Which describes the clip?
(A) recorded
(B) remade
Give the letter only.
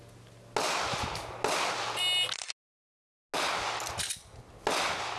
A